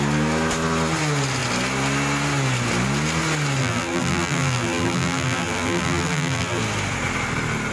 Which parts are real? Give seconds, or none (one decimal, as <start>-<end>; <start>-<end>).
0.0-3.6; 6.6-7.7

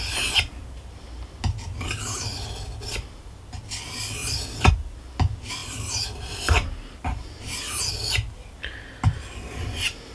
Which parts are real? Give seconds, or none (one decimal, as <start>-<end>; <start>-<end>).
0.0-2.3; 3.2-4.2; 4.7-10.1